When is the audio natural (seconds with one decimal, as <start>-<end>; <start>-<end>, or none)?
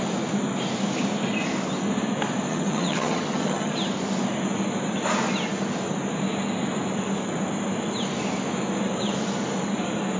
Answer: 0.0-2.5; 3.7-10.2